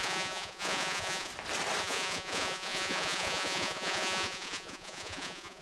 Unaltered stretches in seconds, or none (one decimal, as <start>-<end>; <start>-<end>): 1.3-1.8